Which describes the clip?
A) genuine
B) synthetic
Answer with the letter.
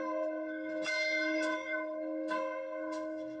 B